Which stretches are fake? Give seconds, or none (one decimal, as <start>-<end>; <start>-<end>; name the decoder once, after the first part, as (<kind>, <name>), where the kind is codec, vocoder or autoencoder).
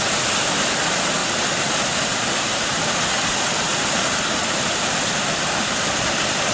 1.2-2.8 (vocoder, BigVGAN v2)